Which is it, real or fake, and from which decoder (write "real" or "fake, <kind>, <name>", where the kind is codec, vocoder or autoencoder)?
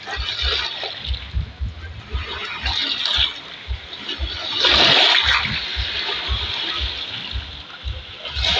real